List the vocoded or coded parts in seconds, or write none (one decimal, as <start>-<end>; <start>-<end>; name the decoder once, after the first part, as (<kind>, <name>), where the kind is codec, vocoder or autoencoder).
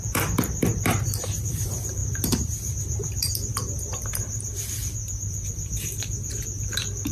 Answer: 0.0-7.1 (vocoder, BigVGAN v2)